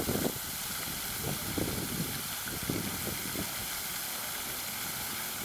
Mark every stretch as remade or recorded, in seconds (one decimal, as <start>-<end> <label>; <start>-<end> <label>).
0.0-5.4 recorded